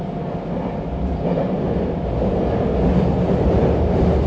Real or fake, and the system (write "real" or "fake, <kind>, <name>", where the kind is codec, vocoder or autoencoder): real